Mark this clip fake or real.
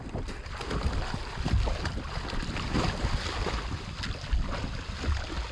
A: real